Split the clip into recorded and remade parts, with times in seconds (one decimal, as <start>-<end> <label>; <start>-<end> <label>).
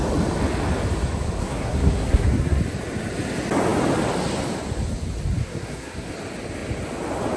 0.0-1.4 recorded; 1.4-2.6 remade; 2.6-5.4 recorded; 5.4-6.1 remade; 6.1-7.4 recorded